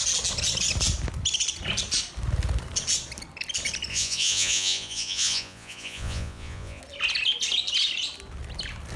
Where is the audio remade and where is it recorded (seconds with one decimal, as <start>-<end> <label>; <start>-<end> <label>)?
0.0-3.9 recorded; 3.9-6.8 remade; 6.8-9.0 recorded